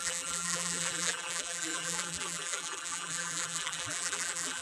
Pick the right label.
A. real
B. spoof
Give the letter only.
B